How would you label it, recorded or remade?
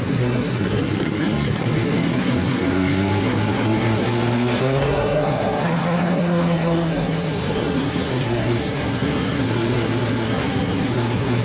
remade